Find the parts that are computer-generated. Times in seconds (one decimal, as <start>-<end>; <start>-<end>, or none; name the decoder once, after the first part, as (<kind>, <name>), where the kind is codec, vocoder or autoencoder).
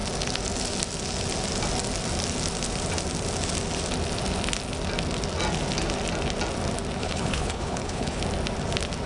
7.0-8.2 (codec, HILCodec)